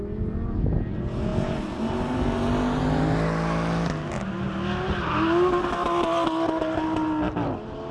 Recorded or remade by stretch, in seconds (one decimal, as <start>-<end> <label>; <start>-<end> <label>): 0.0-7.9 recorded